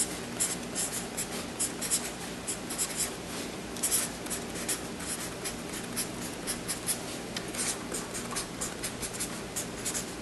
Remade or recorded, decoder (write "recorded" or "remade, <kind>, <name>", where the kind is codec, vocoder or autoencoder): recorded